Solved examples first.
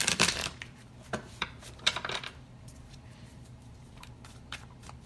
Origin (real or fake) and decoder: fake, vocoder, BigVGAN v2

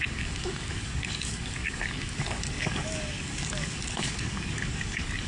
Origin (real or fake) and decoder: fake, codec, DAC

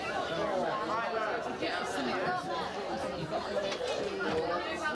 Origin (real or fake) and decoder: real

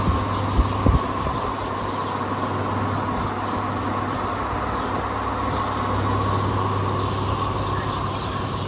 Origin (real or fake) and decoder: real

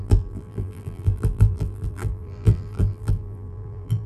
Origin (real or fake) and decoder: fake, vocoder, BigVGAN v2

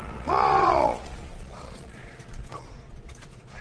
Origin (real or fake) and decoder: fake, vocoder, Vocos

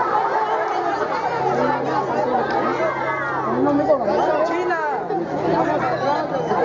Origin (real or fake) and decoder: real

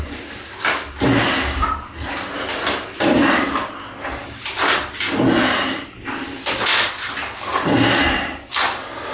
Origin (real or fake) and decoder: real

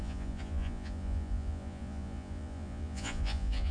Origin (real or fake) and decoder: fake, vocoder, Vocos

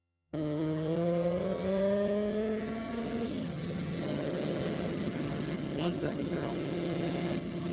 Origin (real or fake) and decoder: fake, vocoder, HiFi-GAN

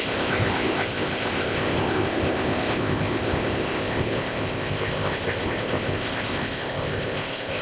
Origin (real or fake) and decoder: fake, codec, ZipCodec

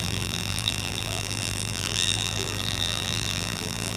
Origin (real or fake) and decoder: fake, vocoder, BigVGAN v2